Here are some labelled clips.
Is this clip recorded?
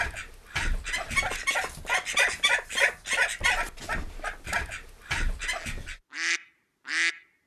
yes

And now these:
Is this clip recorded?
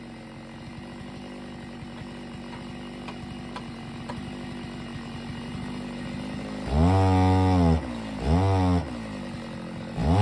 yes